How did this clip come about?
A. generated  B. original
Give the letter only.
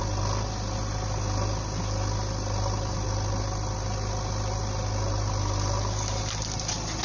B